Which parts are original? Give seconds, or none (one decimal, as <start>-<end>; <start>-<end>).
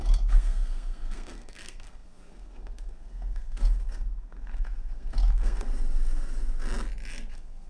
5.7-7.3